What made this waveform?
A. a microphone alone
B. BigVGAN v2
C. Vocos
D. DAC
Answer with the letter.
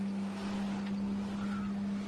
A